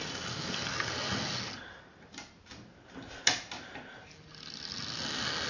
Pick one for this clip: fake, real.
real